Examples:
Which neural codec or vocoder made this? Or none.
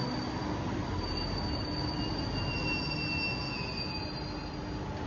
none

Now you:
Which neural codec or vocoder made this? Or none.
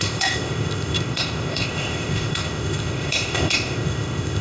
codec, ZipCodec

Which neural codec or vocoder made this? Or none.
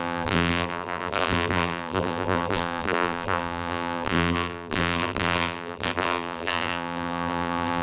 vocoder, BigVGAN v2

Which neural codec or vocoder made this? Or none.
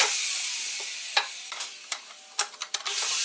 none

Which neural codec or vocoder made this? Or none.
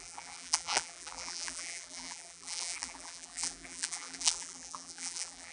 vocoder, BigVGAN v2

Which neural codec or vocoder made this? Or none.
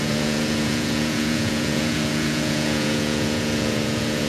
vocoder, Vocos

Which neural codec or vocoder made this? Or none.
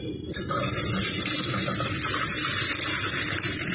none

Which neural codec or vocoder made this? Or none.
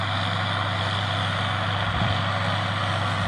none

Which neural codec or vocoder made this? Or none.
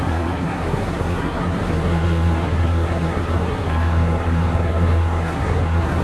codec, SNAC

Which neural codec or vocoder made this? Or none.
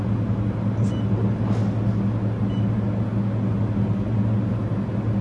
none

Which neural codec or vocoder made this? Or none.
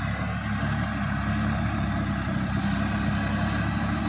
none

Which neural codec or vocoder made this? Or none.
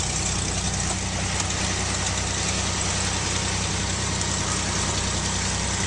none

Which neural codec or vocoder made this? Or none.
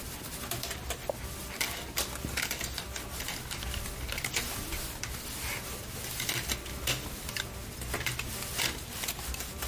none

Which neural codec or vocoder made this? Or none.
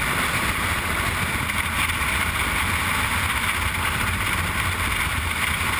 vocoder, BigVGAN v2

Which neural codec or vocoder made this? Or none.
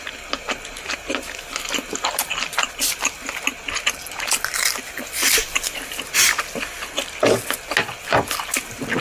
none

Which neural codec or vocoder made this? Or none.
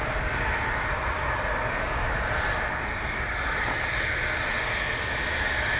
none